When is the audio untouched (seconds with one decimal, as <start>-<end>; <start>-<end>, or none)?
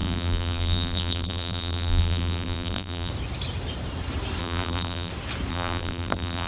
3.1-4.4; 5.1-5.5